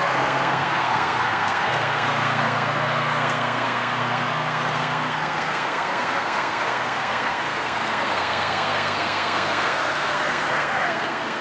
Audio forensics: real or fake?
fake